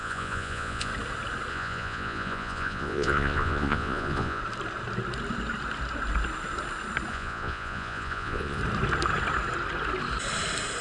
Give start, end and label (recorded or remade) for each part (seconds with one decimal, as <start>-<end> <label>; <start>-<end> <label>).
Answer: 0.0-0.9 remade; 0.9-1.5 recorded; 1.5-4.4 remade; 4.4-7.1 recorded; 7.1-8.6 remade; 8.6-10.8 recorded

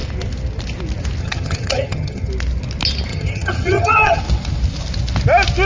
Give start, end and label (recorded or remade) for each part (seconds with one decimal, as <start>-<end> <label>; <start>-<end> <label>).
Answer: 0.0-1.2 recorded; 1.2-2.3 remade; 2.3-3.1 recorded; 3.1-4.2 remade; 4.2-5.7 recorded

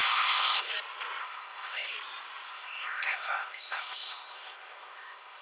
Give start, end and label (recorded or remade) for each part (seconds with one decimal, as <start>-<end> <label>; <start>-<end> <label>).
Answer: 0.0-0.7 remade; 0.7-1.2 recorded; 1.2-1.9 remade; 1.9-2.5 recorded; 2.5-5.4 remade

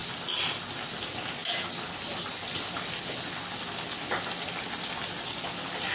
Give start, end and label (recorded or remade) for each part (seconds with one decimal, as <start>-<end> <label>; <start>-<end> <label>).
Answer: 0.0-5.9 recorded

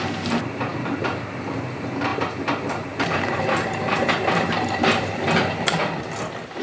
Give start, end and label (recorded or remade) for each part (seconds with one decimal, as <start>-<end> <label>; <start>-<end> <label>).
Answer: 0.0-5.8 remade; 5.8-6.6 recorded

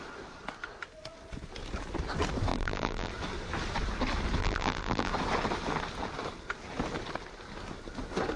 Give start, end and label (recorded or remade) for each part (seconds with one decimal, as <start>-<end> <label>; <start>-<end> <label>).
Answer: 0.0-2.5 recorded; 2.5-3.1 remade; 3.1-4.4 recorded; 4.4-5.1 remade; 5.1-8.4 recorded

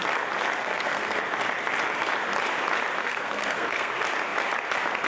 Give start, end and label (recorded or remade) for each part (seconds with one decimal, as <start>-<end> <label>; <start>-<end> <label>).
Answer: 0.0-0.6 recorded; 0.6-1.2 remade; 1.2-3.0 recorded; 3.0-3.9 remade; 3.9-5.1 recorded